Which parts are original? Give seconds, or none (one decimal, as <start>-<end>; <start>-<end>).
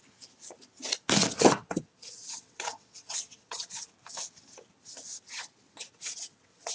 0.0-1.2; 3.9-5.9